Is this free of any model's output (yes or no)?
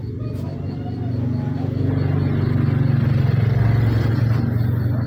yes